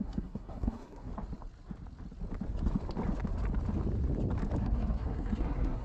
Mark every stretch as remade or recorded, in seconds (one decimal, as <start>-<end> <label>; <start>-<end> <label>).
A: 0.0-1.1 remade; 1.1-4.6 recorded; 4.6-5.8 remade